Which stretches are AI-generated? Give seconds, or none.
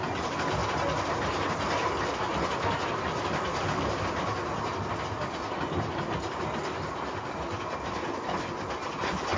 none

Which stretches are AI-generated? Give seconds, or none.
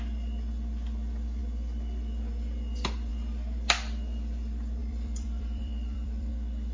4.8-6.3 (vocoder, BigVGAN v2)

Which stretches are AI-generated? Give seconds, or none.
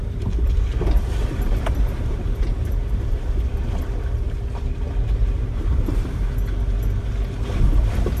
0.0-3.5 (vocoder, BigVGAN v2); 5.2-6.2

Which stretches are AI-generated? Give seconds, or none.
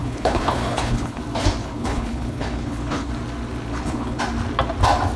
0.0-1.2 (codec, HILCodec); 1.6-3.1; 3.7-4.2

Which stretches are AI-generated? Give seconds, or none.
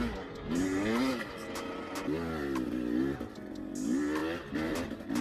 none